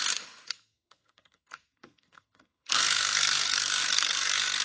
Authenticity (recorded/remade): remade